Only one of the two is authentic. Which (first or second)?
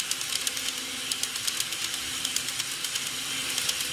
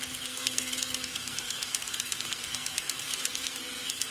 first